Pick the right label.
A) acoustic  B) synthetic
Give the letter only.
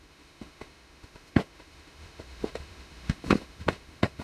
B